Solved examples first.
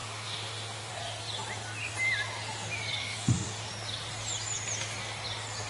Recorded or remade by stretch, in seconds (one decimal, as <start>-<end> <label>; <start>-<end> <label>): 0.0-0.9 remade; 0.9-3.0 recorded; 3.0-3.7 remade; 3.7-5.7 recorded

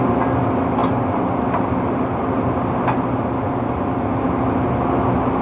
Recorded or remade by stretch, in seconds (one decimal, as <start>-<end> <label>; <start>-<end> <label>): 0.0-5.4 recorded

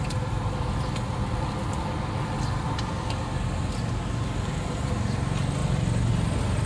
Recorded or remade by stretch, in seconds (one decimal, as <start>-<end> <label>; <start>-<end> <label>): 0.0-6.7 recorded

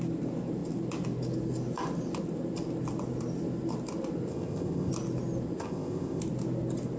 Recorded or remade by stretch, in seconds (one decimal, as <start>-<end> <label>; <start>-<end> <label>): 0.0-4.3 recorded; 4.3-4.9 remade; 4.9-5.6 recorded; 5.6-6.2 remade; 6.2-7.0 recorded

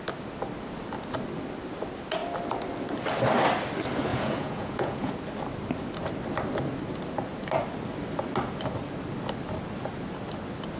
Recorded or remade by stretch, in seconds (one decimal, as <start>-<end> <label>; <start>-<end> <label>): 0.0-4.1 recorded; 4.1-5.1 remade; 5.1-10.8 recorded